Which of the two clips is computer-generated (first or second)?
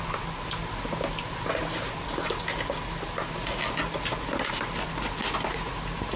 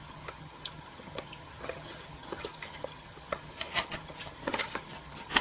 second